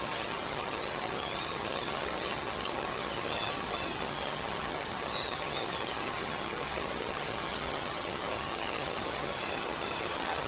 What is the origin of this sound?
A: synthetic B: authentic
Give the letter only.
A